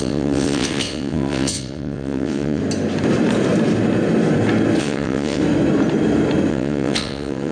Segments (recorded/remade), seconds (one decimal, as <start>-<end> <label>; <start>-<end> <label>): 0.0-2.6 remade; 2.6-4.8 recorded; 4.8-5.4 remade; 5.4-6.5 recorded; 6.5-7.5 remade